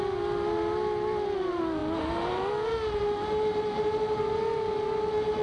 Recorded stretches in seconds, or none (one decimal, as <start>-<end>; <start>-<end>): 0.0-5.4